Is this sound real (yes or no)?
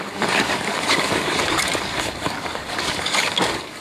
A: no